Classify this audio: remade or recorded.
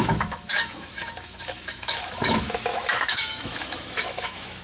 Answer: remade